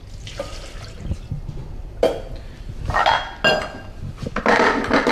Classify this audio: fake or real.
real